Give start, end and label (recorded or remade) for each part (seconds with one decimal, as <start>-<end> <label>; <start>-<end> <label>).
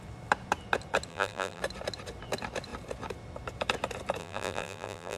0.0-1.1 recorded; 1.1-1.6 remade; 1.6-4.2 recorded; 4.2-5.2 remade